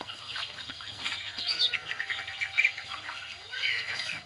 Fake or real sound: fake